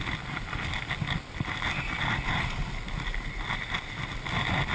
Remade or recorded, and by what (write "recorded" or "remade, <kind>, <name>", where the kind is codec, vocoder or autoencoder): recorded